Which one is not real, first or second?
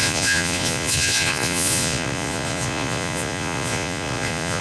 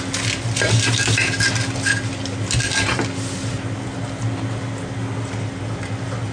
first